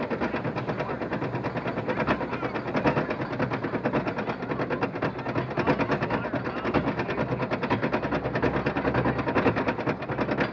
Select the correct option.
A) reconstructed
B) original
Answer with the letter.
B